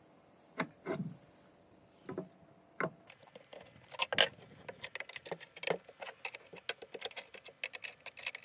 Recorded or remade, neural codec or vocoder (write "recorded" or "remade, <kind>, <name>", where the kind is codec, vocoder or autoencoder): recorded